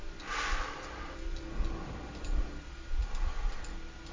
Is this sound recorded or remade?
recorded